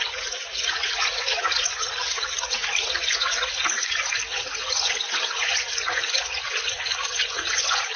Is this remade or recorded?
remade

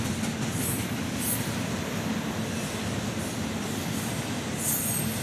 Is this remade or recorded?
recorded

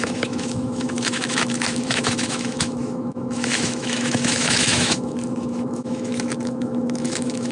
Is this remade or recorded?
remade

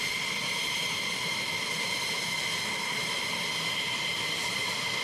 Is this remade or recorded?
recorded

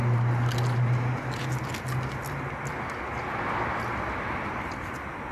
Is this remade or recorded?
recorded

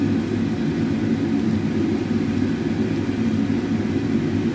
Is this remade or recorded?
recorded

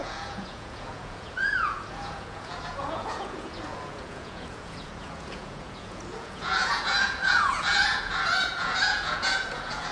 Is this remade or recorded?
remade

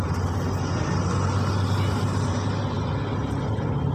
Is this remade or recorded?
recorded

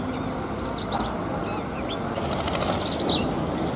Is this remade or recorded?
recorded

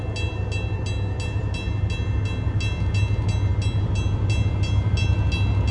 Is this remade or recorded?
recorded